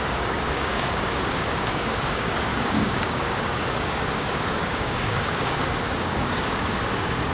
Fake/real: fake